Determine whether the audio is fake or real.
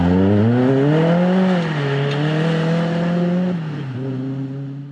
real